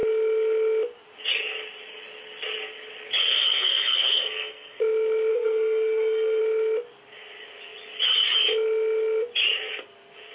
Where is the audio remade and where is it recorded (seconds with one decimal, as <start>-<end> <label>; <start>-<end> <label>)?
0.0-3.2 recorded; 3.2-4.8 remade; 4.8-5.3 recorded; 5.3-6.4 remade; 6.4-10.3 recorded